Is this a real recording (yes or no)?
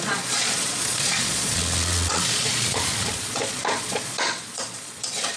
no